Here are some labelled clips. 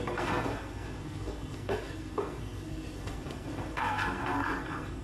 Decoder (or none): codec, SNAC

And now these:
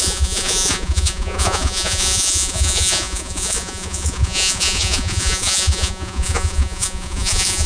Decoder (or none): vocoder, Vocos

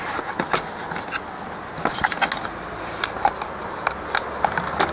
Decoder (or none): none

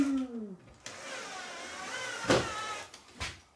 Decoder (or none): none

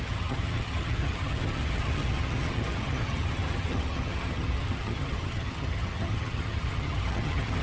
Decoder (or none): vocoder, HiFi-GAN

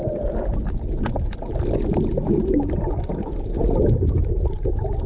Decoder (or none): none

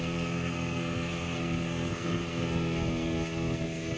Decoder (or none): codec, SNAC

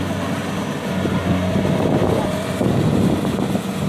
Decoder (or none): none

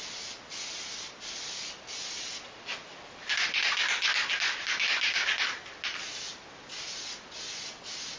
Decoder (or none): none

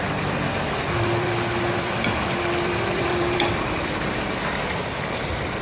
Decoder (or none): vocoder, BigVGAN v2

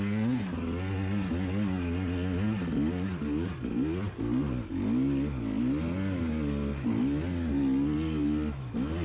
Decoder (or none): none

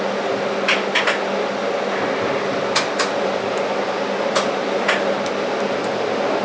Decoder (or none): none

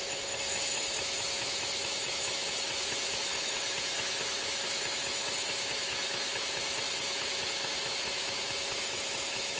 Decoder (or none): autoencoder, DAC-VAE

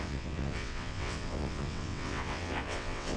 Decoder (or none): vocoder, WaveNeXt